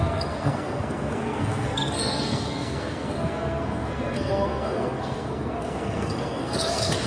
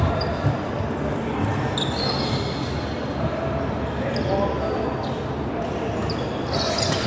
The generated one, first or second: first